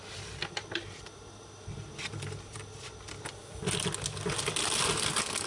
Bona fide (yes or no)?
yes